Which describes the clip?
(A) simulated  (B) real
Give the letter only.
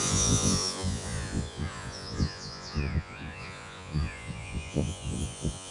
A